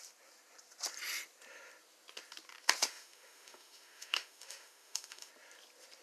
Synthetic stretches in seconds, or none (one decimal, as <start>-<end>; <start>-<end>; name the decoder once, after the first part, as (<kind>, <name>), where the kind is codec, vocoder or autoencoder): 2.8-5.3 (autoencoder, DAC-VAE)